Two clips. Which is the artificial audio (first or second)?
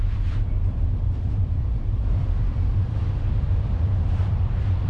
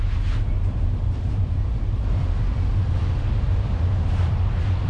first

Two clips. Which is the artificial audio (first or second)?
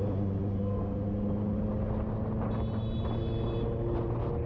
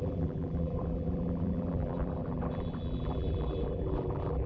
second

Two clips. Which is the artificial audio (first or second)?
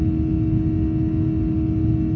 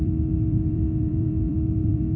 second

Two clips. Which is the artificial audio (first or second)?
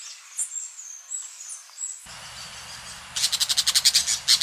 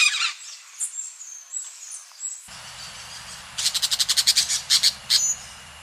second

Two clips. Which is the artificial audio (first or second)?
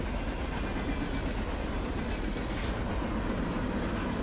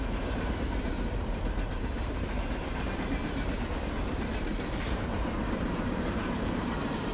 second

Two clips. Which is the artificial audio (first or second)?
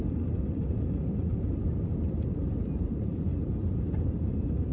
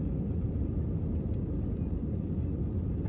first